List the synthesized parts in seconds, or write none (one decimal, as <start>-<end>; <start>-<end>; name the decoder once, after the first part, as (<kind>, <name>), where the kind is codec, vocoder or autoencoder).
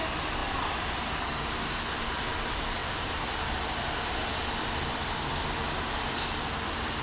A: 0.4-1.3 (vocoder, BigVGAN v2); 2.8-6.5